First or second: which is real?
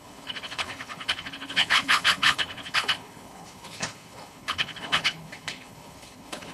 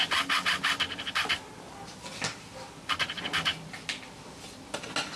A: second